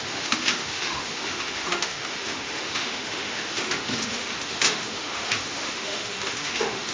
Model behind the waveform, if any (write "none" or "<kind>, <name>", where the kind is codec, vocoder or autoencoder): autoencoder, DAC-VAE